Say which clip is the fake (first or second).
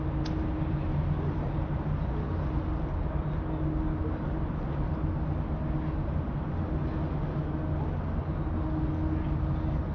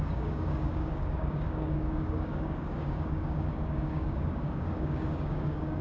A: second